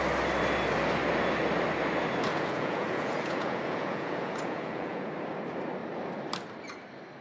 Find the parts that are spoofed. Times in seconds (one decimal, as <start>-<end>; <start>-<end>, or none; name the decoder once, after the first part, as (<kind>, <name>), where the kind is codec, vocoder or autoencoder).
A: 2.3-5.1 (vocoder, Vocos)